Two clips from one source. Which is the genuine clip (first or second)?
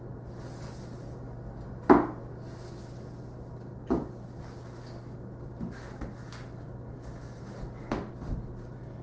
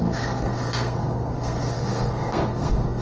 first